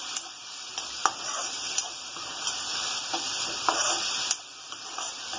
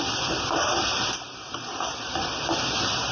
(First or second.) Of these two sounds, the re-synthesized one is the second